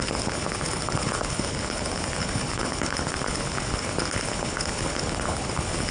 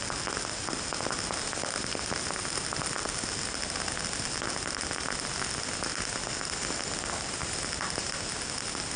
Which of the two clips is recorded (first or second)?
second